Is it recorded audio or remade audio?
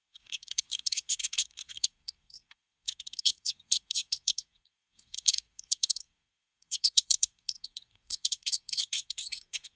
remade